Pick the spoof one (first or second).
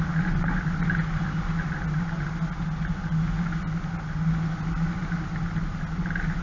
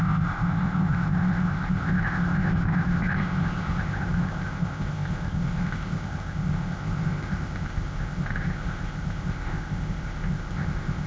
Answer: second